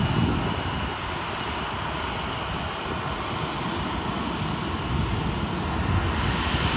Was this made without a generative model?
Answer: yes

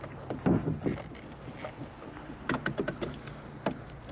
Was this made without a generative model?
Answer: yes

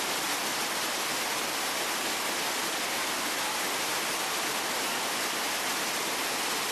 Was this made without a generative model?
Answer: yes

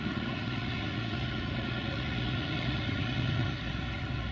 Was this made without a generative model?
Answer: no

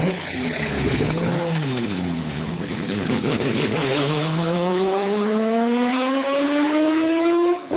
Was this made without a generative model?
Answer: no